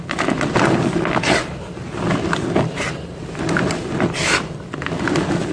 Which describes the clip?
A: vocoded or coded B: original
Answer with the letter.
B